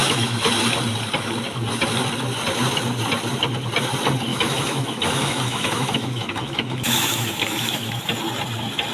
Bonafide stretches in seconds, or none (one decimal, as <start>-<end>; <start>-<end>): 0.5-4.3; 8.0-8.9